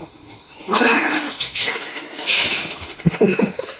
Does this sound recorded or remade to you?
remade